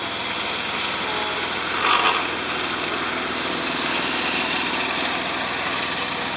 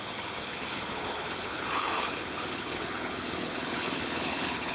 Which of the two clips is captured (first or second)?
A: first